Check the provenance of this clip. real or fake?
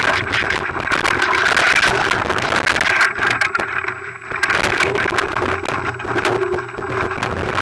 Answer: real